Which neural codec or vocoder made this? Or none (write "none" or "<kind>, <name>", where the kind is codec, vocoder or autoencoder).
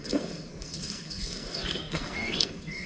codec, SNAC